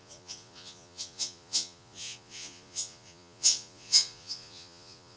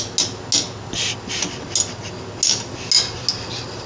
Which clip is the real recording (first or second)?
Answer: second